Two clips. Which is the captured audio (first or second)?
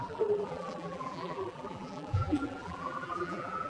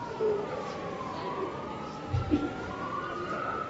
second